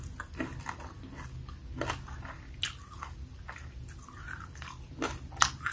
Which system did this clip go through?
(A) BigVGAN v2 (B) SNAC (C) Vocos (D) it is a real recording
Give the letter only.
D